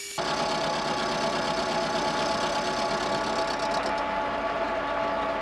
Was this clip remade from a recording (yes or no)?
no